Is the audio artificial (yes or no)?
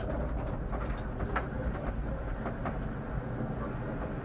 no